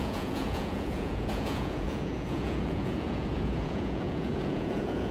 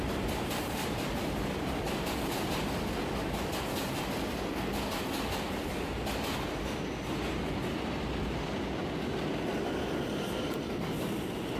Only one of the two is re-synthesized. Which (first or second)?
first